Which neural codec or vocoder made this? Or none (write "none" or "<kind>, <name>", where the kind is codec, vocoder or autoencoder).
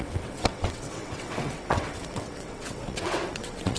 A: vocoder, WaveNeXt